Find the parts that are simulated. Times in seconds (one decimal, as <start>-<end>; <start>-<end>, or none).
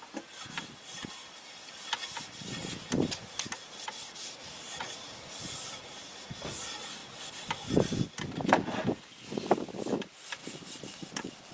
none